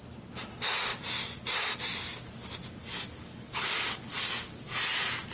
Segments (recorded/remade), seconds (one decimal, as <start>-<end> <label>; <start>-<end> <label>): 0.0-2.8 recorded; 2.8-4.3 remade; 4.3-5.3 recorded